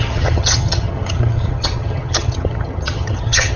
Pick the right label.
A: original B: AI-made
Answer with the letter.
B